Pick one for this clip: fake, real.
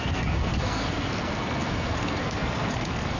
fake